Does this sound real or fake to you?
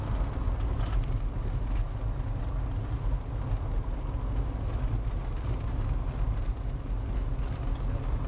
real